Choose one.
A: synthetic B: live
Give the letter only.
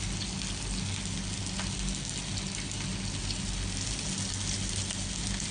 B